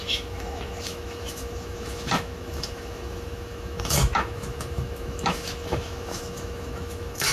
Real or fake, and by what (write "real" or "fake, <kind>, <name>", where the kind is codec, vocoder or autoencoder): fake, autoencoder, DAC-VAE